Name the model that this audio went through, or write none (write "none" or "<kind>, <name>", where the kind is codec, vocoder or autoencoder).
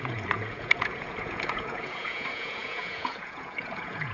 vocoder, Vocos